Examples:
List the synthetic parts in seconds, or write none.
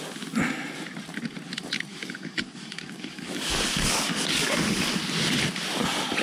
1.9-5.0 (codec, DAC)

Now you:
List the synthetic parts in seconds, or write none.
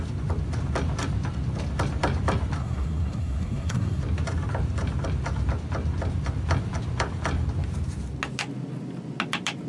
2.6-4.0 (codec, SNAC)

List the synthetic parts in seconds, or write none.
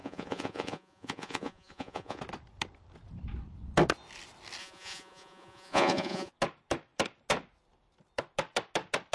0.0-2.2 (vocoder, Vocos); 4.6-6.3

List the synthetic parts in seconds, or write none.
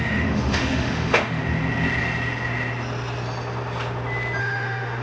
0.0-1.4 (autoencoder, DAC-VAE); 4.4-5.0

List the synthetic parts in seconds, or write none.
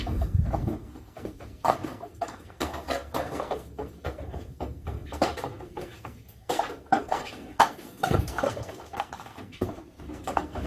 0.0-10.7 (codec, SNAC)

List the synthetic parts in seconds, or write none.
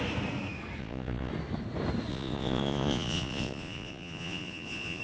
0.8-1.3 (vocoder, Vocos); 2.1-5.0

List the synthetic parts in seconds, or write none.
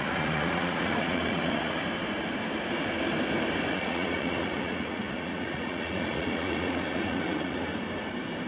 0.0-1.8 (vocoder, Vocos); 3.7-7.7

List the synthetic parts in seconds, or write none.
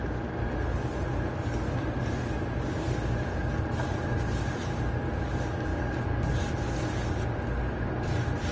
none